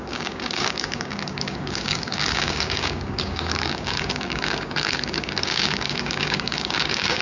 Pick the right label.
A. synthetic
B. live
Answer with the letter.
A